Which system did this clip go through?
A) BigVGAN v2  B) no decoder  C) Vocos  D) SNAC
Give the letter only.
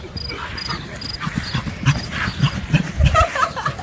B